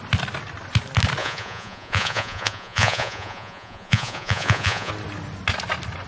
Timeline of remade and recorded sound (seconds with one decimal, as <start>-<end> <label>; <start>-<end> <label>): 0.0-1.2 recorded; 1.2-4.9 remade; 4.9-6.1 recorded